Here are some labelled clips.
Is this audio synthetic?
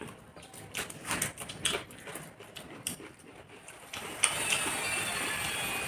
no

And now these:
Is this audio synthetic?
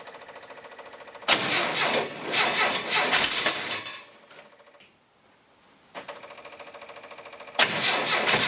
no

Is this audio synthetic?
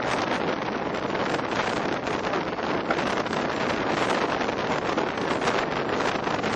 no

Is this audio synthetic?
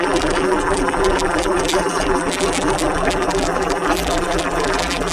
yes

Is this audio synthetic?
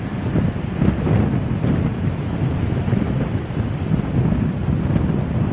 no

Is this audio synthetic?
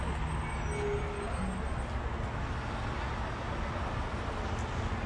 no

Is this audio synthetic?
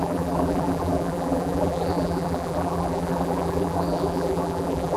yes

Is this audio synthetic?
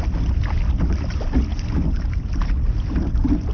no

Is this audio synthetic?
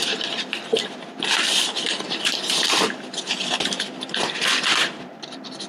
yes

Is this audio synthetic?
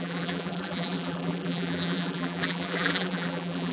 yes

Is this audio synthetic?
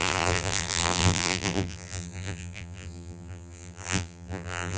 yes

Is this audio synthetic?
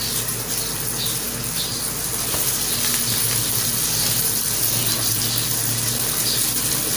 no